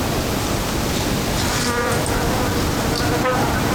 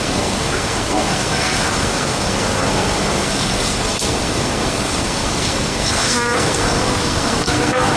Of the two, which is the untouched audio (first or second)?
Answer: first